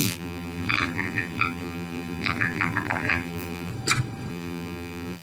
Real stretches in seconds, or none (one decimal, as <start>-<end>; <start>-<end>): 3.7-4.3